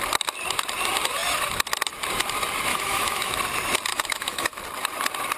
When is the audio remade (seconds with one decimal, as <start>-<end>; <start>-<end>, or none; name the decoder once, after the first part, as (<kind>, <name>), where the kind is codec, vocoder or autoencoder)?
2.7-3.3 (autoencoder, DAC-VAE); 3.9-4.6